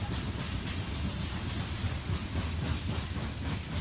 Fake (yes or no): no